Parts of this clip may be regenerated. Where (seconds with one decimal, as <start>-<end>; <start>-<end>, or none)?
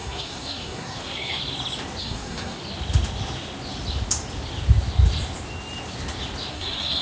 0.0-1.4; 2.0-2.6; 6.5-7.0